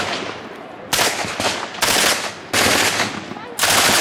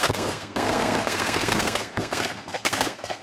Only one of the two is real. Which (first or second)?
first